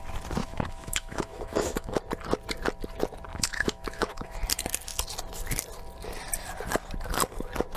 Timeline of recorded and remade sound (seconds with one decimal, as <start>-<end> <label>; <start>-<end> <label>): 0.0-0.4 recorded; 0.4-2.0 remade; 2.0-3.3 recorded; 3.3-4.4 remade; 4.4-7.8 recorded